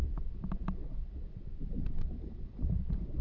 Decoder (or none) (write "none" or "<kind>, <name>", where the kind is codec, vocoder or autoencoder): none